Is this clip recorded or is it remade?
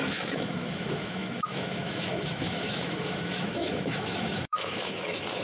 remade